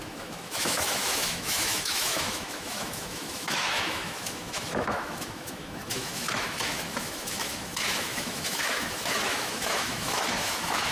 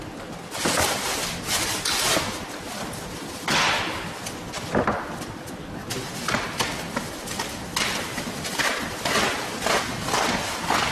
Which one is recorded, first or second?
second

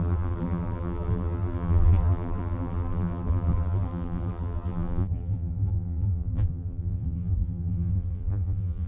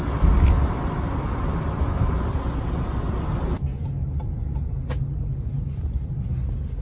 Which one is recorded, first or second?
second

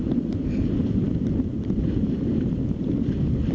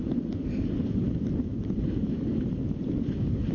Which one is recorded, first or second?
second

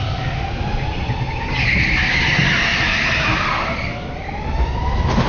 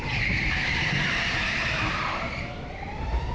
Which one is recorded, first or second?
first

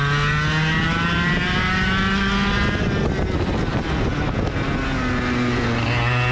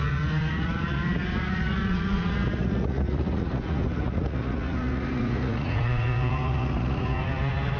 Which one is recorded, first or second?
first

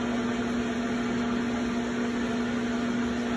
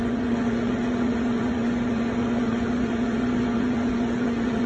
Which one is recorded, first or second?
first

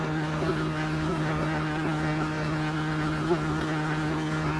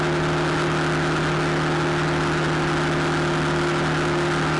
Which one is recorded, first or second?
second